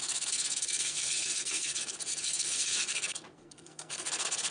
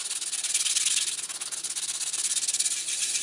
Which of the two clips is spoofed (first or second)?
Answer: first